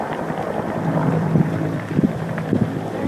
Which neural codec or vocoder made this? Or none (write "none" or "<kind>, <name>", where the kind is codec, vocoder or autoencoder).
vocoder, BigVGAN v2